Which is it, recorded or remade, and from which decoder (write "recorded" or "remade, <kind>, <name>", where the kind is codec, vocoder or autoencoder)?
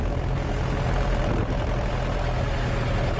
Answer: recorded